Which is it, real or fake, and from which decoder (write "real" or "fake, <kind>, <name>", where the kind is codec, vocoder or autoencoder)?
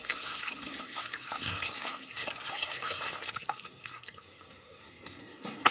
fake, codec, SNAC